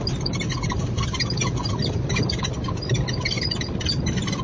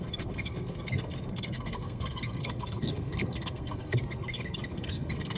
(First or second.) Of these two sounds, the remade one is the second